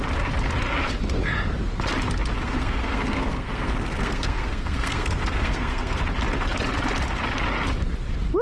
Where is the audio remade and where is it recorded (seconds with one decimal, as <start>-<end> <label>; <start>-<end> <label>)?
0.0-2.4 recorded; 2.4-6.0 remade; 6.0-8.4 recorded